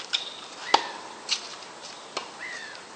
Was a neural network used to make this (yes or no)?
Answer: no